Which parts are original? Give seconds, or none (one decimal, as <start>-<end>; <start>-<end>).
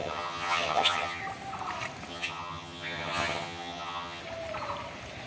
1.2-2.1; 4.2-5.3